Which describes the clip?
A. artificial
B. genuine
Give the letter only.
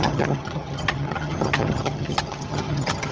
A